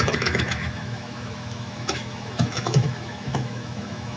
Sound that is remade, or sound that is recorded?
remade